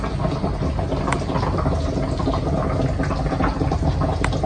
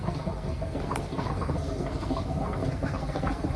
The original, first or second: first